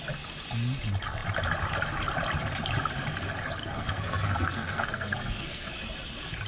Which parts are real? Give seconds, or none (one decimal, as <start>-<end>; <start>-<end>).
0.0-3.6; 5.7-6.5